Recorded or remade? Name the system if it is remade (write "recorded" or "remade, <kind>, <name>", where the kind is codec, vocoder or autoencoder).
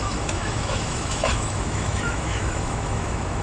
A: remade, autoencoder, DAC-VAE